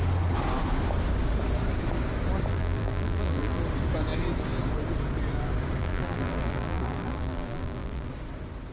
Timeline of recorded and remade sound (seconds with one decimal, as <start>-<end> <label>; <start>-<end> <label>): 0.0-2.5 recorded; 2.5-3.6 remade; 3.6-5.8 recorded; 5.8-8.1 remade; 8.1-8.7 recorded

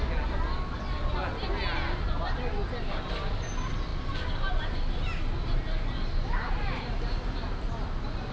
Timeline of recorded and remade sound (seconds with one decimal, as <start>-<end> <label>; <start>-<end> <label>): 0.0-8.3 recorded

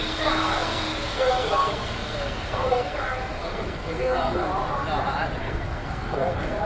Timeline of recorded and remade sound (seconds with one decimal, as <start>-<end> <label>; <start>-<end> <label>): 0.0-4.4 remade; 4.4-5.4 recorded; 5.4-6.6 remade

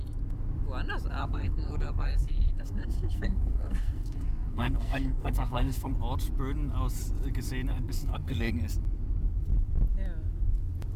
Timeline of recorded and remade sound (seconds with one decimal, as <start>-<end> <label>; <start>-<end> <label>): 0.0-1.2 recorded; 1.2-5.9 remade; 5.9-7.7 recorded; 7.7-8.5 remade; 8.5-11.0 recorded

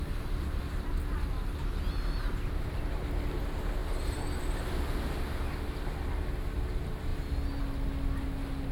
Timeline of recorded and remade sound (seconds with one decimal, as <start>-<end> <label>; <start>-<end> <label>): 0.0-8.7 recorded